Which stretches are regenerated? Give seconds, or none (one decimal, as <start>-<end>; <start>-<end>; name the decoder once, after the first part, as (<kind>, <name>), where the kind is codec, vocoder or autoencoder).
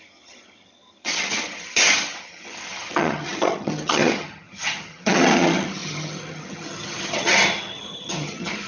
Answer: 0.0-8.7 (vocoder, HiFi-GAN)